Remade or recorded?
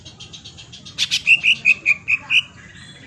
recorded